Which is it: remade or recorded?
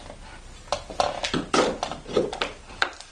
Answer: recorded